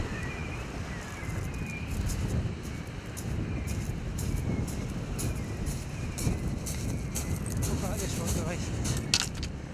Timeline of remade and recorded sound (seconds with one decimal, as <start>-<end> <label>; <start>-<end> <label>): 0.0-9.7 recorded